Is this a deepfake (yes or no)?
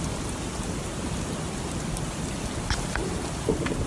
no